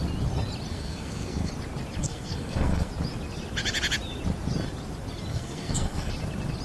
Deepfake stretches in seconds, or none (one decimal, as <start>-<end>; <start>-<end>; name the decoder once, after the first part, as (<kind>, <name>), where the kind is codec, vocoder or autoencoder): 0.7-1.5 (codec, SNAC); 2.0-2.9; 5.3-6.1